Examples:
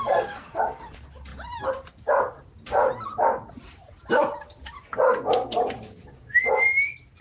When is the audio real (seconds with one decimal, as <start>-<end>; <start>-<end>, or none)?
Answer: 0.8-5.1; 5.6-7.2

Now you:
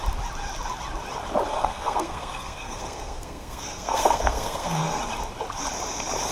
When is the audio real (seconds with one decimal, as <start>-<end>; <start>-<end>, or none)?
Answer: 0.0-1.5; 5.0-6.3

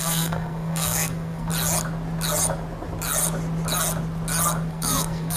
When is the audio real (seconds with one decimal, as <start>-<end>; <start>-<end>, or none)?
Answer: 1.5-4.7

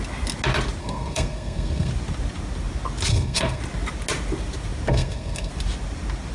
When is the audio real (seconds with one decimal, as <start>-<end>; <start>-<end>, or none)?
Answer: 0.0-0.8; 1.9-3.1; 3.6-4.9; 5.5-6.3